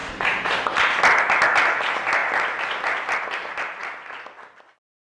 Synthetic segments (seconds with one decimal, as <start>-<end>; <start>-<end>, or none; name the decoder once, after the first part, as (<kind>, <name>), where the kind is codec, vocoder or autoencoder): 0.0-1.0 (vocoder, BigVGAN v2)